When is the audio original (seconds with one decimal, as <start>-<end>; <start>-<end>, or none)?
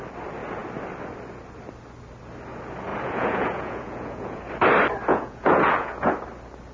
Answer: 0.0-2.9; 4.5-5.1; 6.1-6.7